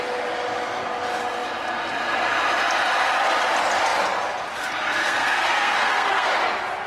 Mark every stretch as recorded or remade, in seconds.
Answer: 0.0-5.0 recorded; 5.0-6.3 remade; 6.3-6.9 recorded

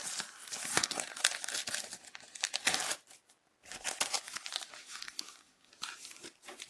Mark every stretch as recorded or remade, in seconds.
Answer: 0.0-0.7 recorded; 0.7-1.2 remade; 1.2-4.8 recorded; 4.8-5.7 remade; 5.7-6.7 recorded

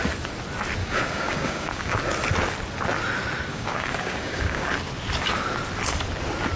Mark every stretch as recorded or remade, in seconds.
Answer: 0.0-0.8 recorded; 0.8-2.0 remade; 2.0-3.5 recorded; 3.5-4.7 remade; 4.7-6.6 recorded

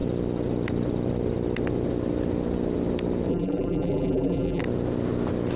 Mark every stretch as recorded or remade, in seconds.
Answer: 0.0-3.3 recorded; 3.3-4.6 remade; 4.6-5.6 recorded

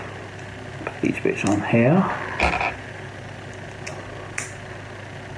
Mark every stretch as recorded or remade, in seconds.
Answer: 0.0-5.4 recorded

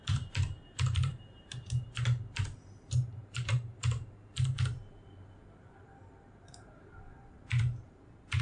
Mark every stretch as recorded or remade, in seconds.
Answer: 0.0-8.4 remade

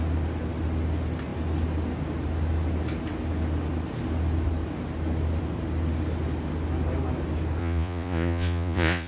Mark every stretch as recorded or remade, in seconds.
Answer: 0.0-7.6 recorded; 7.6-9.1 remade